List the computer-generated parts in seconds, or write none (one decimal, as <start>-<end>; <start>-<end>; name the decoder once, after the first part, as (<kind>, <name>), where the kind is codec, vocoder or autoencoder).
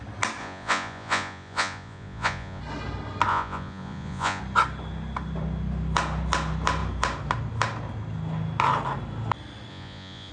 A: 0.4-2.6 (vocoder, Vocos); 3.3-4.4; 9.7-10.3